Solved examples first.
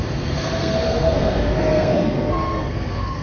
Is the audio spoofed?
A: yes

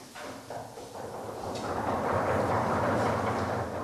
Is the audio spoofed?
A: no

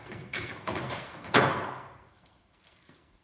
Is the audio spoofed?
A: yes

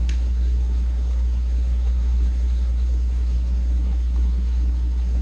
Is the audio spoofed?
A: yes